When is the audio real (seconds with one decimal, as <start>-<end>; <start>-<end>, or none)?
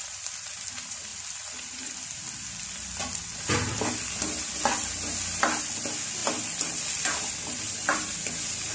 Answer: 0.0-8.7